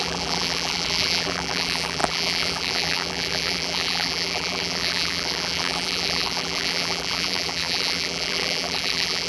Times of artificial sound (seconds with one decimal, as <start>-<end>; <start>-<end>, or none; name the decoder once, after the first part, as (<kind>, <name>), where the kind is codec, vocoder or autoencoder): 0.0-9.3 (vocoder, BigVGAN v2)